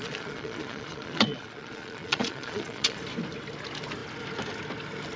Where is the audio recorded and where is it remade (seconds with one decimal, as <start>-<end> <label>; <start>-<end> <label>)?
0.0-3.0 remade; 3.0-5.2 recorded